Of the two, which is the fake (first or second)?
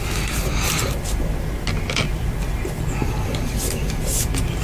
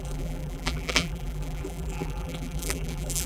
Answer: second